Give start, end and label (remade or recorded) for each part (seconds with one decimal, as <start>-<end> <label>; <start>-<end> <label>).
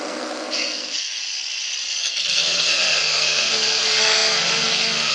0.0-1.2 remade; 1.2-2.0 recorded; 2.0-5.1 remade